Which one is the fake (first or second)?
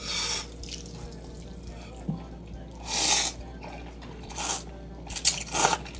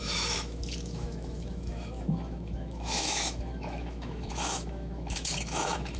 second